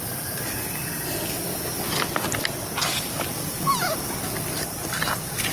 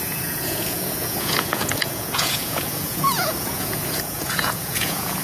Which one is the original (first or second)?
first